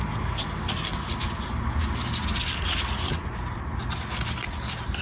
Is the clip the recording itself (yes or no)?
yes